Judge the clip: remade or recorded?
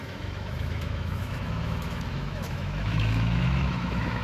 remade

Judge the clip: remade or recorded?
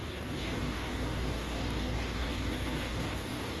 remade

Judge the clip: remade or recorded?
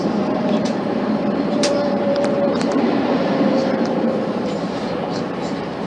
remade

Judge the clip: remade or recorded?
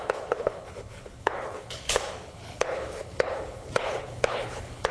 remade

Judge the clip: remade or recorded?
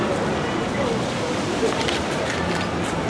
remade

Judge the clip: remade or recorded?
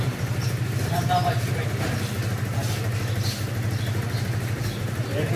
recorded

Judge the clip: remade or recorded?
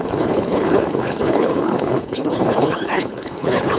remade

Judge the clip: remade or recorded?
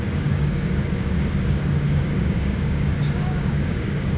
remade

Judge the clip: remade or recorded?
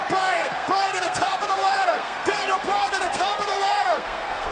remade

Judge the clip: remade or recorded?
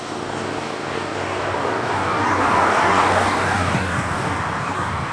remade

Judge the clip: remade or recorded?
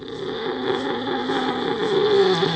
recorded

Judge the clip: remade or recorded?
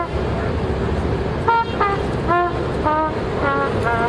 recorded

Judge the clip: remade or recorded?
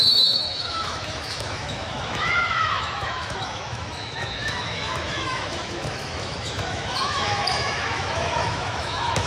remade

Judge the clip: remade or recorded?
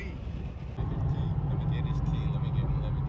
recorded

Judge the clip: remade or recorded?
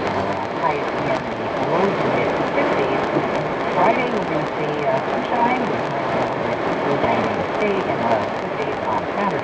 recorded